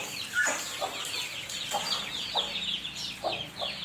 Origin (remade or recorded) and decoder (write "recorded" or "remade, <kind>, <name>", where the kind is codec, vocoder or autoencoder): recorded